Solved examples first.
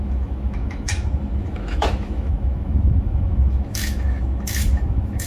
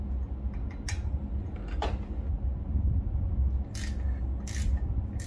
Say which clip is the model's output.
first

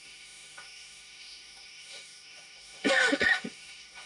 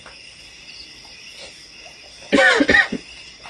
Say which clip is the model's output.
first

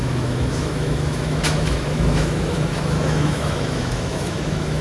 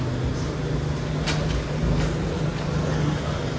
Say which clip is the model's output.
first